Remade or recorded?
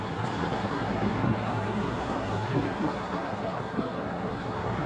remade